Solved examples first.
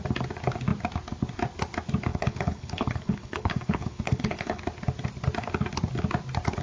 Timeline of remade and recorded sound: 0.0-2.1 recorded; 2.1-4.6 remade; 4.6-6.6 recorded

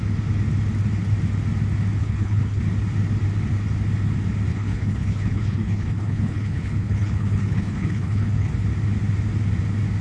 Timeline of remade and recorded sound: 0.0-2.0 recorded; 2.0-2.6 remade; 2.6-4.5 recorded; 4.5-8.5 remade; 8.5-10.0 recorded